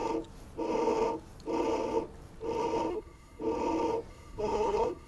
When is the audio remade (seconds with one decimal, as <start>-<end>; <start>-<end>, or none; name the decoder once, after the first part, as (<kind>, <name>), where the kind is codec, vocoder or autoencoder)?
2.9-3.4 (codec, SNAC); 4.1-5.1